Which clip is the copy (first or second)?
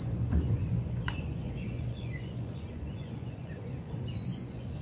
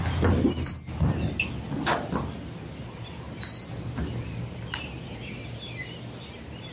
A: first